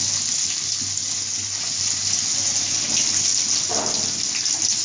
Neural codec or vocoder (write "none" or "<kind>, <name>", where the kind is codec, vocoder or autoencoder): none